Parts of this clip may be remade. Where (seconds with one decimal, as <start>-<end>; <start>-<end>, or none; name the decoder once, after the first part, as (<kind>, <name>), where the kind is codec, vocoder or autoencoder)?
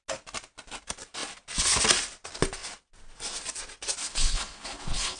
4.0-5.2 (codec, HILCodec)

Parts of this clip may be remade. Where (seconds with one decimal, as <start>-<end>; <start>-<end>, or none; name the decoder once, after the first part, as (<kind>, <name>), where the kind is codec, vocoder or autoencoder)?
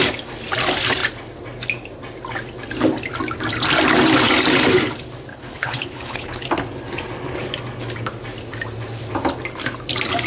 5.3-6.4 (codec, HILCodec)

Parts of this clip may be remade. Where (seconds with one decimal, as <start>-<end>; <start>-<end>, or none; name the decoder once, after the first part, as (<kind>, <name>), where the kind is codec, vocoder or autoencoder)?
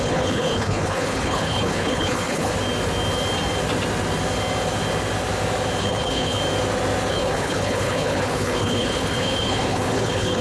0.0-2.5 (codec, HILCodec); 5.8-6.4; 7.1-10.4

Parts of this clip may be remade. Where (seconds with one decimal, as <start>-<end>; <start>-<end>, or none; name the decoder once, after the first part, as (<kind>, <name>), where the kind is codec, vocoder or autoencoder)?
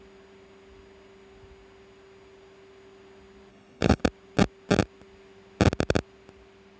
3.5-4.0 (codec, HILCodec)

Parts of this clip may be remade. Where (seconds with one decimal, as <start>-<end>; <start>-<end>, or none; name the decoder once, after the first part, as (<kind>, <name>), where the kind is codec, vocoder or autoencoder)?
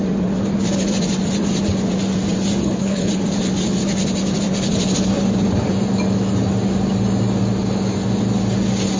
2.6-3.1 (codec, HILCodec)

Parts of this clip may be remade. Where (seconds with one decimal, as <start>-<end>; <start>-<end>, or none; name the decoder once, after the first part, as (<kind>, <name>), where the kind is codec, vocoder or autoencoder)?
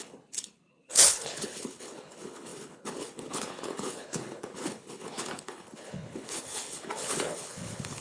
0.0-8.0 (codec, HILCodec)